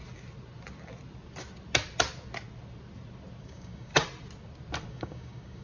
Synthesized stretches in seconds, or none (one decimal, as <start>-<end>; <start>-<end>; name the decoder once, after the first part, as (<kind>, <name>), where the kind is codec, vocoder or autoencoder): 3.4-3.9 (codec, DAC); 4.9-5.6